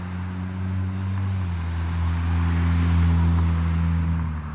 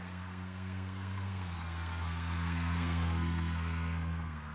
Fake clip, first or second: second